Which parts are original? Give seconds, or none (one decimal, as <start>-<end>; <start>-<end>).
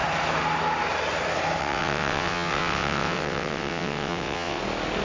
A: 0.0-1.6; 4.6-5.0